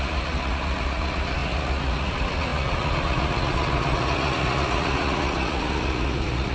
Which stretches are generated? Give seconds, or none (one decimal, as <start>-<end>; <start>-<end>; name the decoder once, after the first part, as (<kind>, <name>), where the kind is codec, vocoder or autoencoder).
0.0-6.5 (vocoder, Vocos)